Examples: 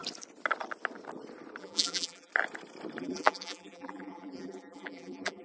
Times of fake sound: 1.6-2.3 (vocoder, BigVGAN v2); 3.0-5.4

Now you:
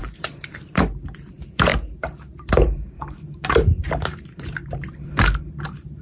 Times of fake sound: 0.0-1.7 (vocoder, BigVGAN v2); 2.5-6.0

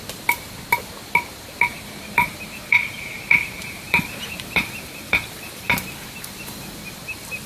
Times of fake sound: 1.7-5.7 (vocoder, BigVGAN v2)

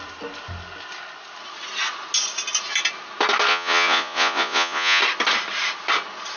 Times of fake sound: 3.5-5.0 (vocoder, Vocos)

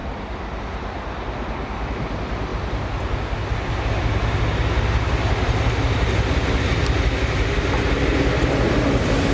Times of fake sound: 0.0-0.6 (vocoder, BigVGAN v2); 2.5-3.7

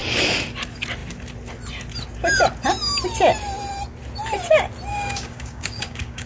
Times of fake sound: 4.9-6.3 (codec, DAC)

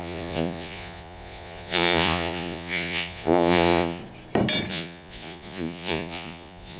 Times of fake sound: 0.0-4.0 (vocoder, Vocos); 4.7-6.8